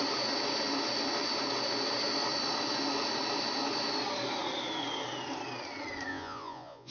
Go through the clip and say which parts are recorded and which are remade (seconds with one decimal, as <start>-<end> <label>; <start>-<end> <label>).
0.0-6.1 recorded; 6.1-6.9 remade